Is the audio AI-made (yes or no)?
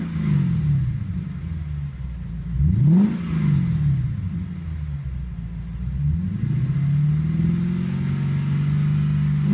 no